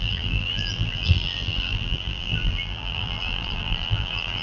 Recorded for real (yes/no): no